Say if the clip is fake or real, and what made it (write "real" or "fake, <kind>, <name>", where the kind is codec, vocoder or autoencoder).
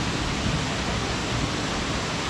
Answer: real